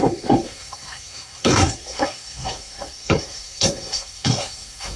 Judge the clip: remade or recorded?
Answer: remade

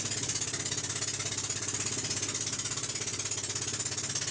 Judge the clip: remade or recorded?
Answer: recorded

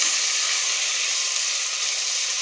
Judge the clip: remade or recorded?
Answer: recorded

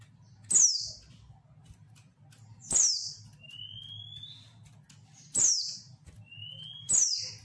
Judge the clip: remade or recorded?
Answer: recorded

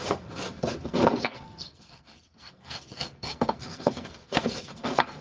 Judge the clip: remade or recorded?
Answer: remade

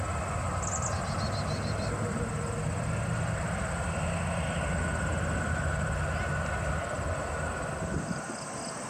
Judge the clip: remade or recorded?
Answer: recorded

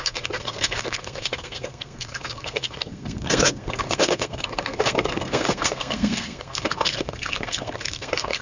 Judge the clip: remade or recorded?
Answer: remade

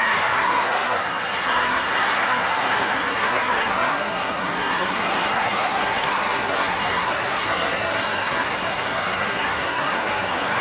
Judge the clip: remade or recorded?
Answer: remade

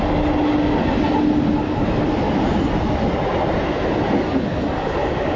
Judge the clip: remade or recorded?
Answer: recorded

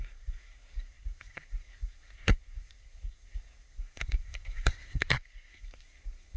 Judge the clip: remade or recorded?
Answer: remade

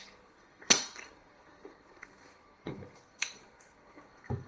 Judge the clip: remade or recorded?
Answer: remade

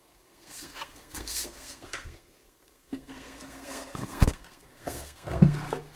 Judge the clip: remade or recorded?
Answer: remade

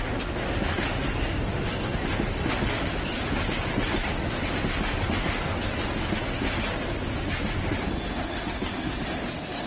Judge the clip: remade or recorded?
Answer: recorded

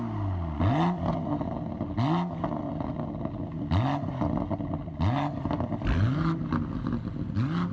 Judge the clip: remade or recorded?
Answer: recorded